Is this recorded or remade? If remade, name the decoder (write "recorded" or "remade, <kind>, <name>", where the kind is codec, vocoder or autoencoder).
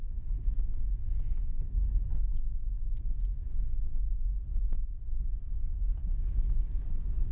recorded